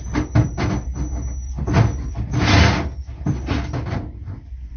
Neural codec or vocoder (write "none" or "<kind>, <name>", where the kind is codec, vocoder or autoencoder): none